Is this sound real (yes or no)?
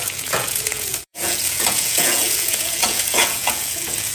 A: no